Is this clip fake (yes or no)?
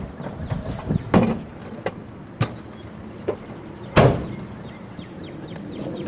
no